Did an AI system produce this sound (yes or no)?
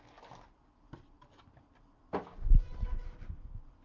no